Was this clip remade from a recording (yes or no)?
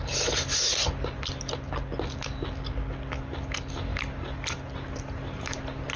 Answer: no